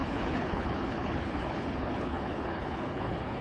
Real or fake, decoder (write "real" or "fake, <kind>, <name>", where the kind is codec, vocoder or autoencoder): fake, codec, HILCodec